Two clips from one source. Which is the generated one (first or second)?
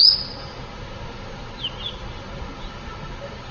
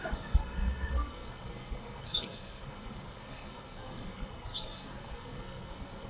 second